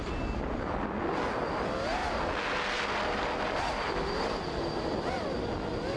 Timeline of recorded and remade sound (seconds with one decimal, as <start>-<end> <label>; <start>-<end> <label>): 0.0-6.0 recorded